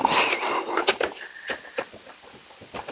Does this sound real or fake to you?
real